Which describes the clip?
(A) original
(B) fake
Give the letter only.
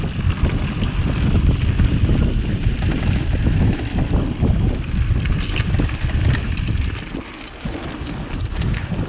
A